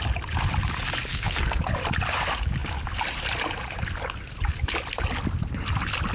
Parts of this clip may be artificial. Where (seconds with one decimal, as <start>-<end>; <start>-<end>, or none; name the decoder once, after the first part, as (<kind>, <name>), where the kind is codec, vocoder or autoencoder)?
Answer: 1.1-1.6 (codec, SNAC)

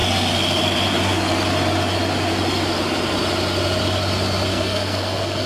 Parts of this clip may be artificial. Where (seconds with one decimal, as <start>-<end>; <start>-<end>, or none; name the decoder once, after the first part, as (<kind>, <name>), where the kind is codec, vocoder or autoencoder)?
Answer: 4.5-5.5 (codec, SNAC)

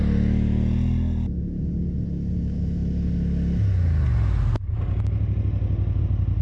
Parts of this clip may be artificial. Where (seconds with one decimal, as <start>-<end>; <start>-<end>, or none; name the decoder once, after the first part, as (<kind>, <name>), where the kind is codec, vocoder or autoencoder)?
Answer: none

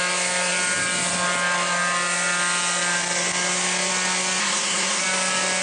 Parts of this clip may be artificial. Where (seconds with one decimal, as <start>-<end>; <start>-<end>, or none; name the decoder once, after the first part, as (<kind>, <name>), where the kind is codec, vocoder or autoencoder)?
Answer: 4.4-5.0 (codec, SNAC)

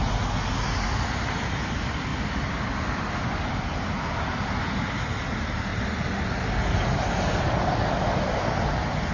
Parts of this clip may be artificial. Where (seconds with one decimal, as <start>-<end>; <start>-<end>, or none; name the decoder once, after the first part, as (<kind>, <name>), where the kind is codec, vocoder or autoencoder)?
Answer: none

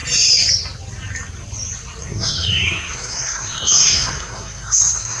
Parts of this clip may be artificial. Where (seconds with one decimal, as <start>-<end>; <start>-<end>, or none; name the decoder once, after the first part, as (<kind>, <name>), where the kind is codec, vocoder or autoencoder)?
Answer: 2.0-5.2 (codec, SNAC)